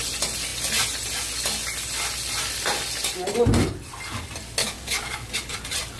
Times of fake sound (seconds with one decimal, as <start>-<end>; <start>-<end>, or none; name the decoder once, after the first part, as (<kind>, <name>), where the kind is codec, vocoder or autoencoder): 4.6-5.3 (codec, DAC)